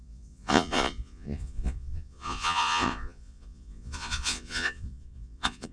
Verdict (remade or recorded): remade